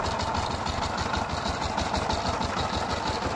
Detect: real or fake real